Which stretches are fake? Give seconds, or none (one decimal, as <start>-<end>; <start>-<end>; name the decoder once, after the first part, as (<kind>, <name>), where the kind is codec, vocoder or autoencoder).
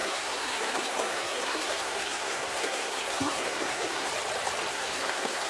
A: 0.0-4.1 (codec, SNAC); 4.7-5.5